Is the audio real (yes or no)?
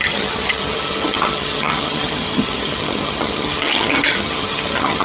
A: no